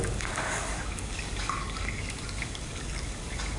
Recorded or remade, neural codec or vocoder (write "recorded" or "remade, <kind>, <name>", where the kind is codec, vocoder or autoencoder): remade, codec, DAC